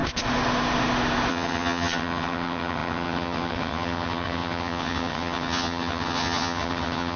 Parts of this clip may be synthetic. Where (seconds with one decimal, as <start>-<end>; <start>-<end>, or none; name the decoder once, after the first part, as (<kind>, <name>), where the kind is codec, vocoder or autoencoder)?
1.3-7.2 (vocoder, HiFi-GAN)